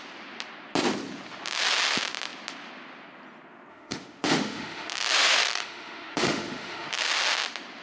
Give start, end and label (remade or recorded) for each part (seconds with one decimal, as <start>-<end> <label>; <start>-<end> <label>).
0.0-3.7 recorded; 3.7-7.0 remade; 7.0-7.8 recorded